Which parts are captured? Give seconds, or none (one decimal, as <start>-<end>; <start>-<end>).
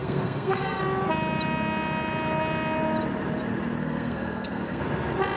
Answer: 0.8-3.8; 4.8-5.4